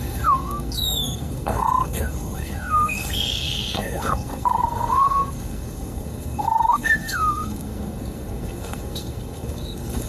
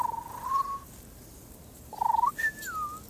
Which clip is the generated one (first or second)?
first